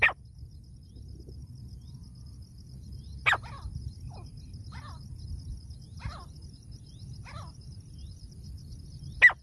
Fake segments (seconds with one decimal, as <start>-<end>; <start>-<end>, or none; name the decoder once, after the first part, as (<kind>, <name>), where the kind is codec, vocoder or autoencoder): none